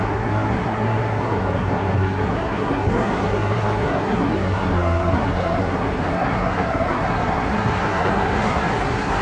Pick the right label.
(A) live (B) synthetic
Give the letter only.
B